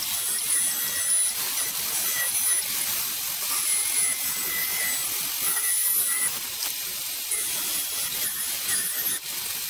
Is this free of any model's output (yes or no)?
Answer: yes